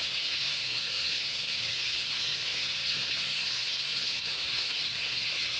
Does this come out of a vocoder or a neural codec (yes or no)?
yes